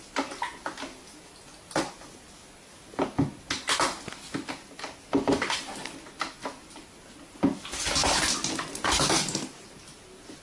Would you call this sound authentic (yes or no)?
yes